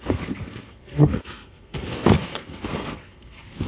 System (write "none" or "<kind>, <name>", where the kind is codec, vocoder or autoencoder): codec, SNAC